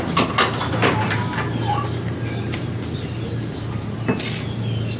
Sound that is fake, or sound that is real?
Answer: real